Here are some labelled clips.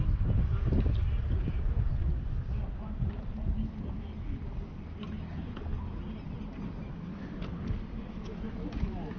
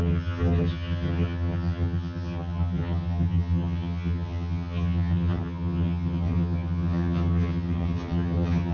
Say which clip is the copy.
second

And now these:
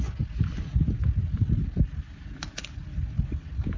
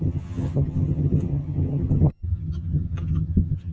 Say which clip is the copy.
second